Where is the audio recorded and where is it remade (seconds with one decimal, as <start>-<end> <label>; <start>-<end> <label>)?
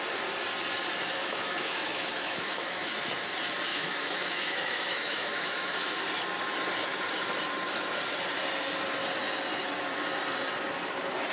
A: 0.0-1.2 recorded; 1.2-2.9 remade; 2.9-3.7 recorded; 3.7-6.0 remade; 6.0-11.3 recorded